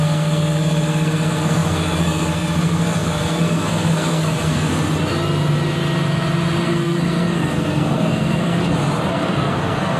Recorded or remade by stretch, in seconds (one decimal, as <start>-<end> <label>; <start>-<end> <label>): 0.0-4.7 remade; 4.7-6.6 recorded; 6.6-8.6 remade; 8.6-9.1 recorded; 9.1-10.0 remade